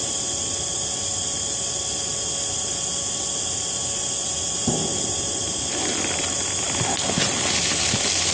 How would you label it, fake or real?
real